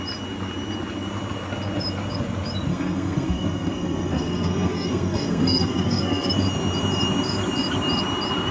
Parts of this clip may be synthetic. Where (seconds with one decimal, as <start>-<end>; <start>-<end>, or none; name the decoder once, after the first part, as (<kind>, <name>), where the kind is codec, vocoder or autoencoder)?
2.7-6.3 (codec, SNAC)